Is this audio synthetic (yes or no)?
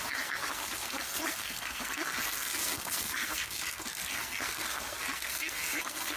yes